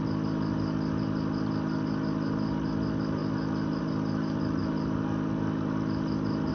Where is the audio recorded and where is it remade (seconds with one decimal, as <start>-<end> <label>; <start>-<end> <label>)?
0.0-6.5 recorded